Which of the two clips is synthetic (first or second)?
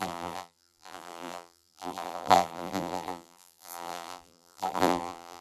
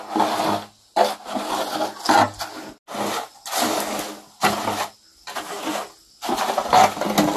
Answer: first